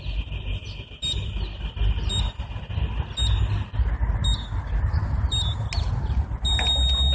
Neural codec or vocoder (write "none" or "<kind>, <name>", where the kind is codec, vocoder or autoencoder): none